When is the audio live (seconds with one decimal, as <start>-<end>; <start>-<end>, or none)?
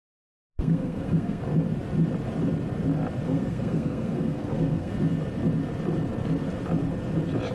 1.4-3.3; 4.9-7.5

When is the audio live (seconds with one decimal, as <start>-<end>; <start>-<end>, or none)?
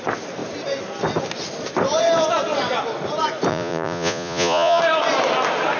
0.0-3.5; 4.8-5.8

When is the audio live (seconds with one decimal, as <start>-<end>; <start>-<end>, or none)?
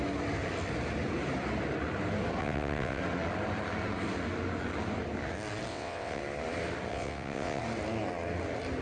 0.0-2.4; 3.0-5.7; 6.2-6.9; 7.6-8.8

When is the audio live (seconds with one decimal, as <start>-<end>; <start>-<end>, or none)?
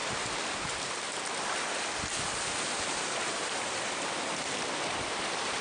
0.0-5.6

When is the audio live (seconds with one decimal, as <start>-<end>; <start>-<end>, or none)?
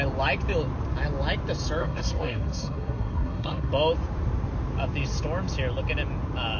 0.0-1.8; 3.7-6.6